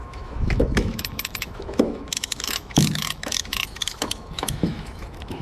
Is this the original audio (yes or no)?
no